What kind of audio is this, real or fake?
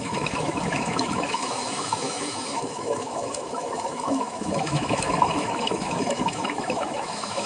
fake